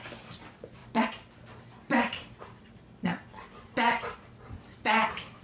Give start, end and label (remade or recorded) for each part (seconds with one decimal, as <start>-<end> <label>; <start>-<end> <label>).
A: 0.0-5.4 recorded